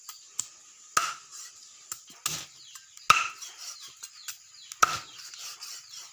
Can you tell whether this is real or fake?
real